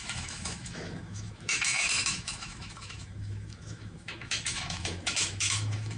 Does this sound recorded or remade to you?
remade